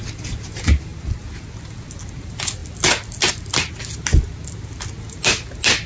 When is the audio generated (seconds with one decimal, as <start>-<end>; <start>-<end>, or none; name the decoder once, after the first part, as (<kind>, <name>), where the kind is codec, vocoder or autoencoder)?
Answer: none